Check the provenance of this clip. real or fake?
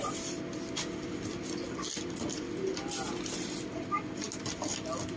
real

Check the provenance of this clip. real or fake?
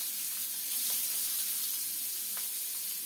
real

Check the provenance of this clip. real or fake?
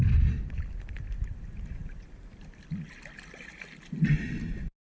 real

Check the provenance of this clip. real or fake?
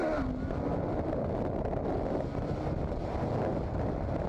real